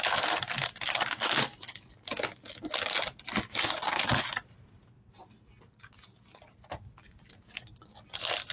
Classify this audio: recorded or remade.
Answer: recorded